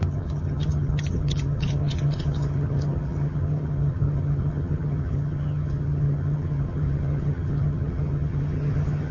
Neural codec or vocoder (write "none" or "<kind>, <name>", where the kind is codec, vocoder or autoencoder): vocoder, HiFi-GAN